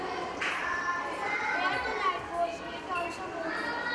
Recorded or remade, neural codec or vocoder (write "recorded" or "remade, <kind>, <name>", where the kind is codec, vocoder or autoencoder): recorded